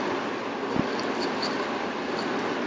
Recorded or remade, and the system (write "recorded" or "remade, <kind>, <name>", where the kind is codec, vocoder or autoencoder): recorded